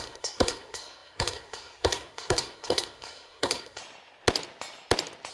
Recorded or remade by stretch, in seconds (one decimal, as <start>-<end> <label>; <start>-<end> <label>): 0.0-3.8 remade; 3.8-5.3 recorded